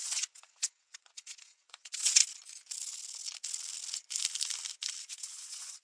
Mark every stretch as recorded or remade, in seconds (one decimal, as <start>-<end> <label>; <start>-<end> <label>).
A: 0.0-2.2 remade; 2.2-5.1 recorded; 5.1-5.8 remade